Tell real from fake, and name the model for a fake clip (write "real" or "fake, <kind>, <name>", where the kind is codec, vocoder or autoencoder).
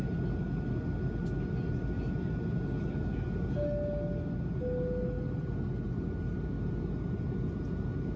real